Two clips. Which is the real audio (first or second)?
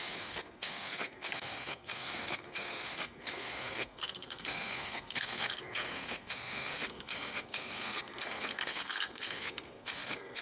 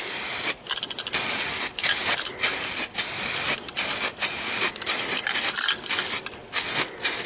second